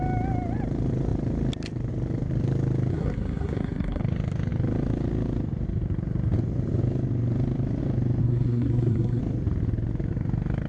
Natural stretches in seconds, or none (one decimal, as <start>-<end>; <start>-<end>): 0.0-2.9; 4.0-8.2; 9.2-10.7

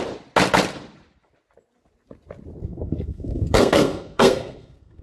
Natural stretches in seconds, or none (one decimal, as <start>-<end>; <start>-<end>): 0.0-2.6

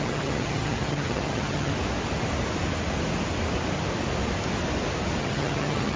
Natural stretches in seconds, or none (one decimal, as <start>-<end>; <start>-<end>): 1.7-5.2

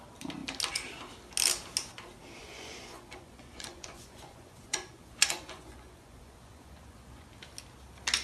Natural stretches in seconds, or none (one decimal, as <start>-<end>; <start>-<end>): 0.0-2.4; 7.3-8.2

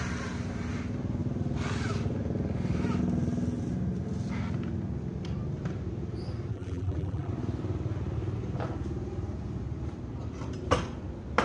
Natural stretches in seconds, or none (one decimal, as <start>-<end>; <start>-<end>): 0.0-6.5; 7.3-11.4